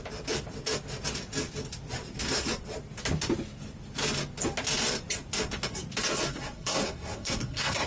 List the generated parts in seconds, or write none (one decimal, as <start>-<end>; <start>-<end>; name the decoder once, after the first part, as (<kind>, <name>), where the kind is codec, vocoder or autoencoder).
6.3-7.9 (codec, SNAC)